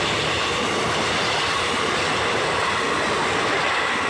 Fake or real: real